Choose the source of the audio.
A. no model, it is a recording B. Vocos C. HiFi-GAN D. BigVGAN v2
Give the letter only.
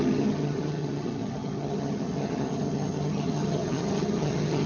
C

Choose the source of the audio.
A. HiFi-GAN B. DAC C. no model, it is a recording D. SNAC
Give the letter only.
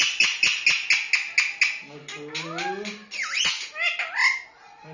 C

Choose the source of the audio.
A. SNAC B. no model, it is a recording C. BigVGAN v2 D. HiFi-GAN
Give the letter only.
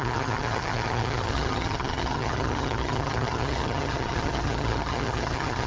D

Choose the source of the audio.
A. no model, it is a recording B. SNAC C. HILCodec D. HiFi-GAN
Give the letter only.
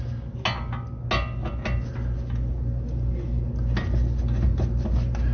A